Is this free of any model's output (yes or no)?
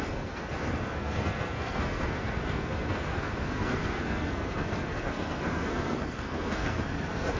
no